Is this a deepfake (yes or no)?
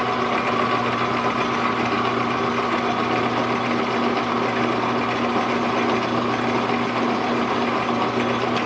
no